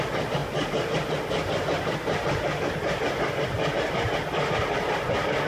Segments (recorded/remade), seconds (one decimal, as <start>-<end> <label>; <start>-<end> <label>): 0.0-5.5 recorded